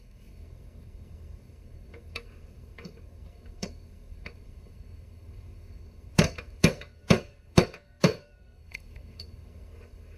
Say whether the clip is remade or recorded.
remade